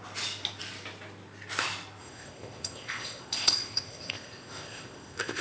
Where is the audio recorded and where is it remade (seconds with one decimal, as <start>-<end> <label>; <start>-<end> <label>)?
0.0-2.0 recorded; 2.0-5.4 remade